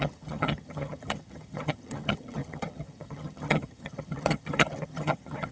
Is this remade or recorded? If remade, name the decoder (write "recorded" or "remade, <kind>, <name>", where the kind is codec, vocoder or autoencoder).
remade, vocoder, HiFi-GAN